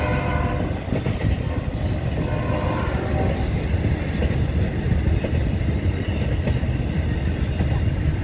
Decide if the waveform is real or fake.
real